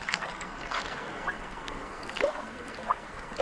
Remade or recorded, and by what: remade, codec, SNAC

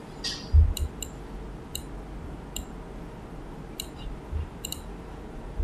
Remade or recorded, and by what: recorded